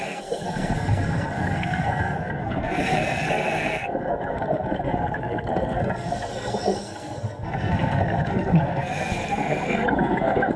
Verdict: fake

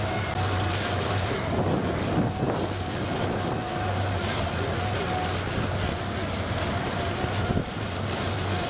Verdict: real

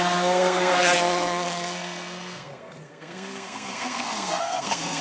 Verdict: fake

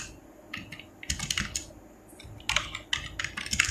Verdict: real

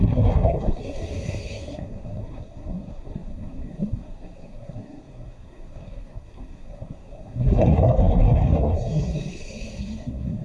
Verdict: fake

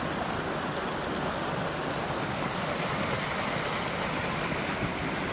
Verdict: real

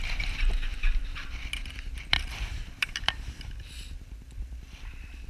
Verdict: fake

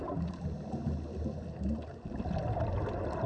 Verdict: real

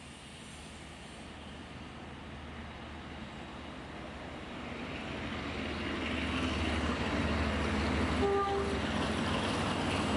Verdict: real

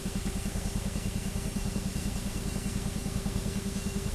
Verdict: fake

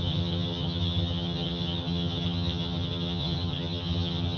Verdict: fake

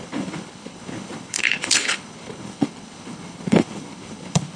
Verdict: fake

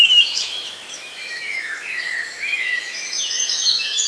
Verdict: fake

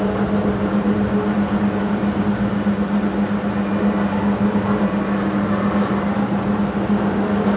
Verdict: real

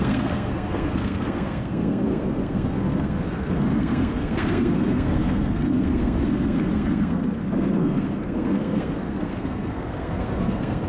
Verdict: fake